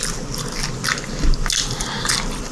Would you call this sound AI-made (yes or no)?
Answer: no